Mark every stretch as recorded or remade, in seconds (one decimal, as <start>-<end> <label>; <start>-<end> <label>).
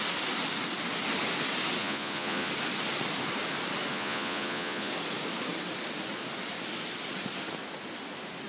0.0-1.8 recorded; 1.8-2.5 remade; 2.5-3.9 recorded; 3.9-4.9 remade; 4.9-8.5 recorded